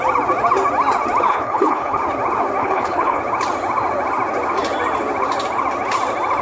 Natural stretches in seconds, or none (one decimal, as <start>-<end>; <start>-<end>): 0.0-1.3; 2.0-2.6; 3.2-6.4